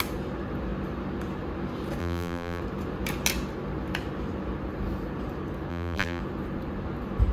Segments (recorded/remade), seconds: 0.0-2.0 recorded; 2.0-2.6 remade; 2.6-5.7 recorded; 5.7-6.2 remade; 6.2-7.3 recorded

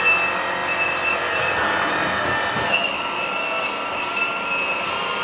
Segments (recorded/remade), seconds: 0.0-5.2 recorded

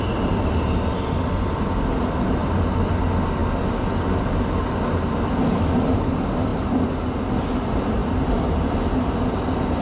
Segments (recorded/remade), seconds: 0.0-2.4 recorded; 2.4-3.0 remade; 3.0-8.0 recorded; 8.0-8.7 remade; 8.7-9.8 recorded

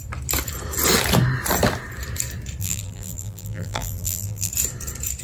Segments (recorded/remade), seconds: 0.0-2.6 recorded; 2.6-4.5 remade; 4.5-5.2 recorded

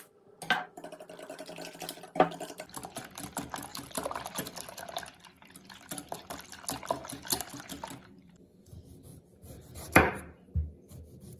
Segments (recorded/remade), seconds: 0.0-3.7 recorded; 3.7-6.3 remade; 6.3-9.1 recorded; 9.1-10.1 remade; 10.1-11.4 recorded

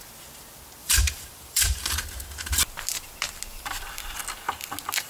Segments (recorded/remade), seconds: 0.0-0.8 recorded; 0.8-2.0 remade; 2.0-3.5 recorded; 3.5-4.2 remade; 4.2-5.1 recorded

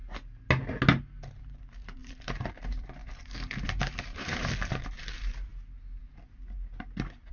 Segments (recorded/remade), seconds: 0.0-1.3 recorded; 1.3-5.5 remade; 5.5-7.3 recorded